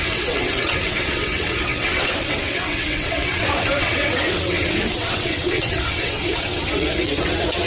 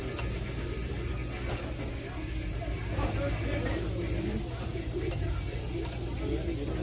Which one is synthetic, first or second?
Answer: first